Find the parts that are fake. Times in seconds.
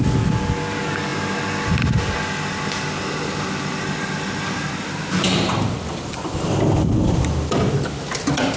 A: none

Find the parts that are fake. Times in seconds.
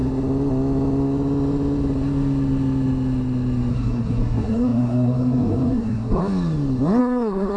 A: 3.7-6.2; 7.0-7.6